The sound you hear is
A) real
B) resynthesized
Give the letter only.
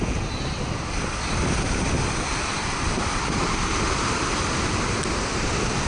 B